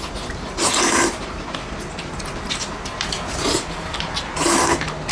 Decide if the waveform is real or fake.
real